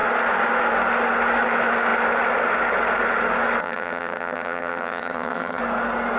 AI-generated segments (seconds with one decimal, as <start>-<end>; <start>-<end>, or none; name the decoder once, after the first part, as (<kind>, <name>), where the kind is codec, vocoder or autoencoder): 3.6-5.6 (vocoder, HiFi-GAN)